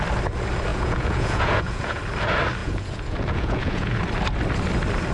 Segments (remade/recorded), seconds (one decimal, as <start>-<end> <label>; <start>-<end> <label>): 0.0-0.7 recorded; 0.7-2.0 remade; 2.0-2.6 recorded; 2.6-4.0 remade; 4.0-5.1 recorded